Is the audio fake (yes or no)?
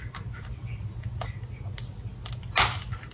no